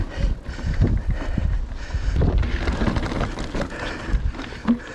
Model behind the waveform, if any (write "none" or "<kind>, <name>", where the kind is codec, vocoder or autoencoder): none